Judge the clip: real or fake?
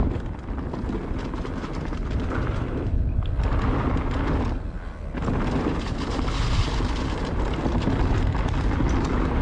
real